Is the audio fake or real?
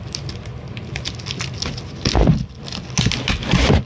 real